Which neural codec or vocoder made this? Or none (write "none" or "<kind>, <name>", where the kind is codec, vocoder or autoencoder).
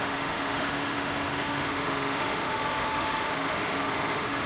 autoencoder, DAC-VAE